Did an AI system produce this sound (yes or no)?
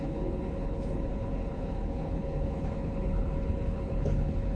yes